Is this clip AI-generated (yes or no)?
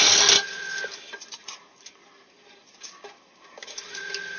no